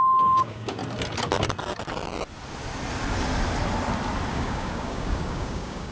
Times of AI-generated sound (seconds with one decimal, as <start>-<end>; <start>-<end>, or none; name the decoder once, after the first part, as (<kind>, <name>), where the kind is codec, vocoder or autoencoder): 0.0-0.8 (codec, DAC); 4.3-5.9